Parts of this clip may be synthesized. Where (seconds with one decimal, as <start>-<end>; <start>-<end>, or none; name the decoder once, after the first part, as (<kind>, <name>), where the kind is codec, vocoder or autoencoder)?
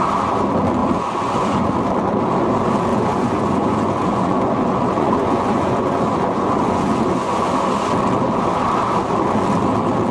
0.8-1.7 (vocoder, Vocos); 2.9-7.5